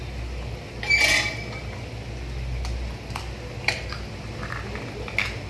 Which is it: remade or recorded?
recorded